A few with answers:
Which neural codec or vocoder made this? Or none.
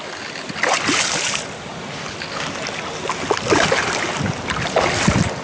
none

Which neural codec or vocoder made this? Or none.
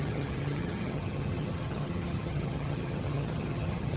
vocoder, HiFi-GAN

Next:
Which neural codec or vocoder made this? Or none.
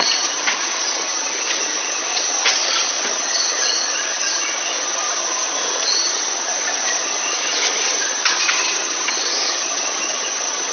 vocoder, HiFi-GAN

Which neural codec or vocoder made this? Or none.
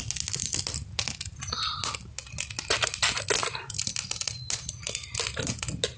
none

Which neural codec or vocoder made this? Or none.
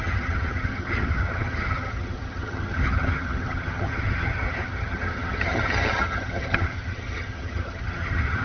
vocoder, HiFi-GAN